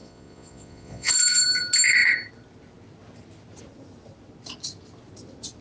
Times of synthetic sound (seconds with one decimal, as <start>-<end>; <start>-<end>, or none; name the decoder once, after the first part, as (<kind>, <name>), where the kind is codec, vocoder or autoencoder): 0.0-1.1 (vocoder, Vocos)